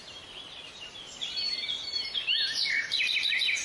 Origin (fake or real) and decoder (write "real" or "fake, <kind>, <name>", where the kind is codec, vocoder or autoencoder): real